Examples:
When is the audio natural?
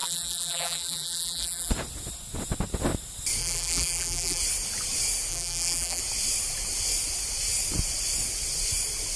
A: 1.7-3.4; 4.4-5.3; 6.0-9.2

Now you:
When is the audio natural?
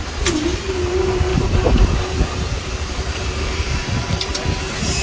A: 0.0-1.3; 4.3-5.0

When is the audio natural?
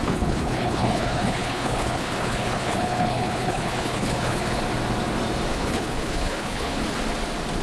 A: 4.6-5.5; 6.8-7.6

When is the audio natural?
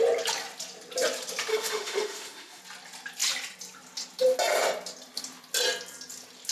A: 0.0-1.5; 2.6-6.5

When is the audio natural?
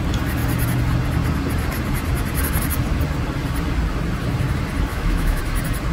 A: 0.0-4.9; 5.4-5.9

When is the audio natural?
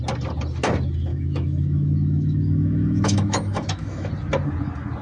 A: 0.0-1.1; 4.1-5.0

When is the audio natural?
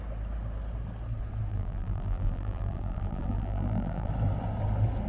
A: 0.0-1.5; 4.1-5.1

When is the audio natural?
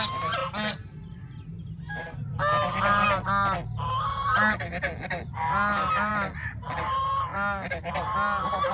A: 0.0-8.7